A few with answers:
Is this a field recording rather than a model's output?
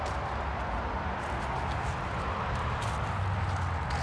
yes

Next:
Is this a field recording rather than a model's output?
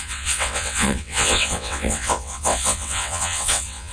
no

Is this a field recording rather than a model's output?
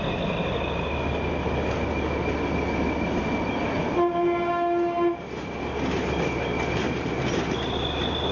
yes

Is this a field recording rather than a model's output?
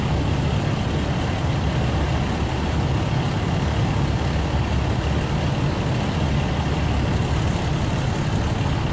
yes